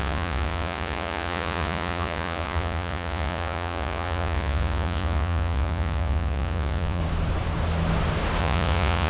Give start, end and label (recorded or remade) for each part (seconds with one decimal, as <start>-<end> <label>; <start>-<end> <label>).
0.0-7.0 remade; 7.0-8.4 recorded; 8.4-9.1 remade